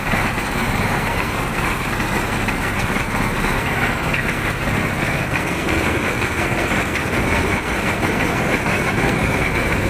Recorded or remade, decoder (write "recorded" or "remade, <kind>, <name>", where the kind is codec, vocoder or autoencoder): remade, codec, SNAC